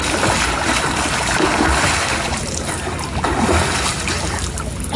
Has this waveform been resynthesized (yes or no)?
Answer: no